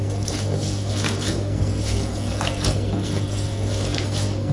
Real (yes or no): no